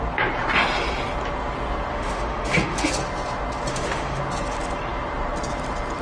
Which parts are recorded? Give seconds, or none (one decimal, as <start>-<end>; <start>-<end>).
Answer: 0.0-1.9; 2.9-3.7; 4.2-6.0

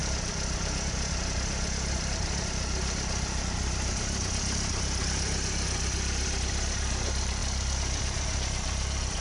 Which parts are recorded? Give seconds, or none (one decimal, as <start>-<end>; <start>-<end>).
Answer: 0.0-9.2

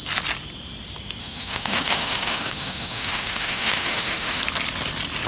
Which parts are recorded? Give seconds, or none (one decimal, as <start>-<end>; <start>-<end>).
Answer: 0.0-1.2; 4.4-5.3

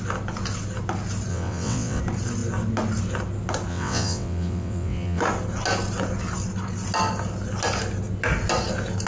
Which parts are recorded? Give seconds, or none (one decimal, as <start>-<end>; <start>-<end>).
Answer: 0.0-1.3; 2.0-3.7; 5.2-9.1

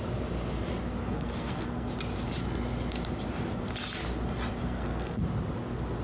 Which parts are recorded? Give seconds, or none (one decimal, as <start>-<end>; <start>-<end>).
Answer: 0.0-1.0; 1.9-4.6; 5.2-6.0

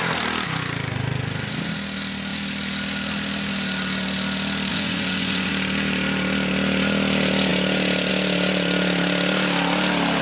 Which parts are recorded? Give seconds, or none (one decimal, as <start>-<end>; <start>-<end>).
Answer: 0.0-4.7; 5.5-10.2

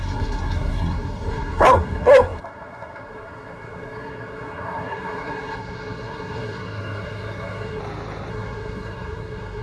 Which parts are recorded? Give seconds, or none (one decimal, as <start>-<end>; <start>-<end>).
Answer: 7.8-8.3